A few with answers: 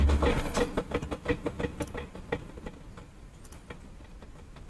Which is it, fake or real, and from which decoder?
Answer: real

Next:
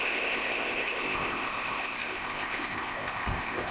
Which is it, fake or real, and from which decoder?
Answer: fake, codec, ZipCodec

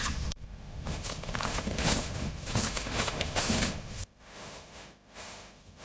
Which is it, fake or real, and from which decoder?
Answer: fake, autoencoder, DAC-VAE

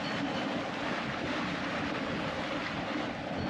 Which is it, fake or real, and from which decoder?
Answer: real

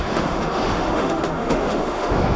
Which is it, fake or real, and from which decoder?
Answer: fake, autoencoder, DAC-VAE